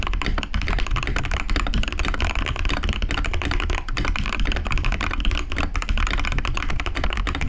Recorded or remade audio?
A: recorded